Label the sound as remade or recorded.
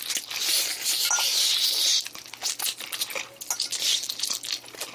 recorded